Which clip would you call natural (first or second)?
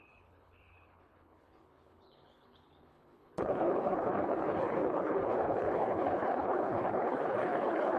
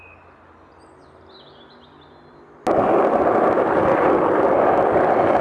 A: second